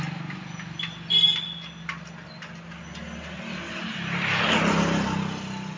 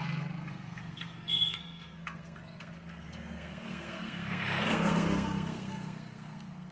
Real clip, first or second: first